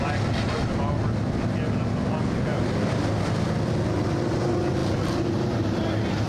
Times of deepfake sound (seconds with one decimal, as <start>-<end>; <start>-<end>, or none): none